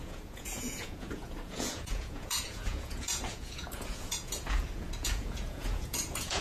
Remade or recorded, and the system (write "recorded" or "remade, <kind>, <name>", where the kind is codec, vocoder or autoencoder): remade, vocoder, Vocos